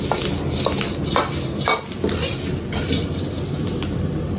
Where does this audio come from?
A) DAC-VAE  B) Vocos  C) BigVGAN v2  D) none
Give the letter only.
D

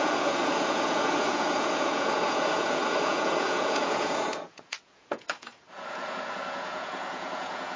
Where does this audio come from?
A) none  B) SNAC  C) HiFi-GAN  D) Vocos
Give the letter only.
D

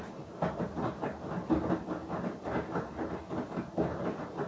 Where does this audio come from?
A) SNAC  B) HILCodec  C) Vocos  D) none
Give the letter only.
D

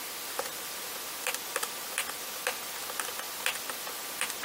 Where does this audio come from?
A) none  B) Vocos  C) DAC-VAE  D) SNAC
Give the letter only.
A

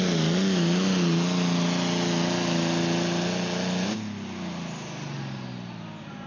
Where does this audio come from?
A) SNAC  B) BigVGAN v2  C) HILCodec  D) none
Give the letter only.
D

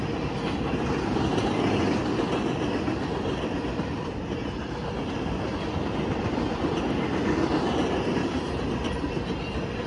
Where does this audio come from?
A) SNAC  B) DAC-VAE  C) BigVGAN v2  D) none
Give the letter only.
D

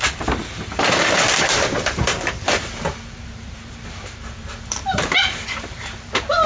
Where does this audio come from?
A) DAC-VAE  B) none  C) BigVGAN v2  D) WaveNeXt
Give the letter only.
C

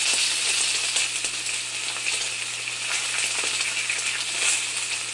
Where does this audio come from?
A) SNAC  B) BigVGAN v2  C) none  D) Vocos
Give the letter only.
C